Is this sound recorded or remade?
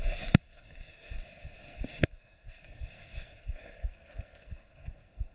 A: remade